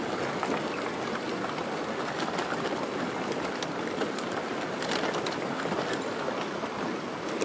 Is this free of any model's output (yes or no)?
yes